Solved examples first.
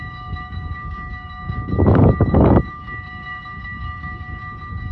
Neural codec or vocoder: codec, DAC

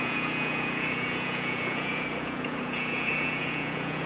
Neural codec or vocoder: vocoder, Vocos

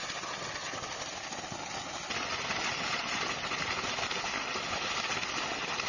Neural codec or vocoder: none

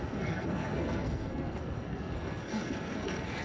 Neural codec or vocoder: codec, SNAC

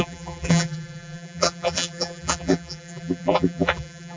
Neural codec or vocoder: vocoder, BigVGAN v2